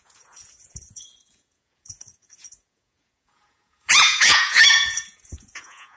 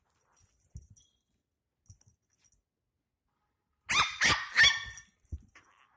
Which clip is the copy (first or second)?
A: first